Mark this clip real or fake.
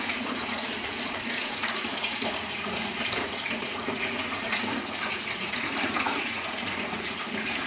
fake